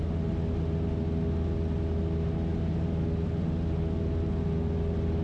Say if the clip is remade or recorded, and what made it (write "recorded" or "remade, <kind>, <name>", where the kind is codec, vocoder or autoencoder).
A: recorded